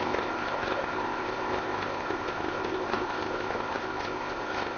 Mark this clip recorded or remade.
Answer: remade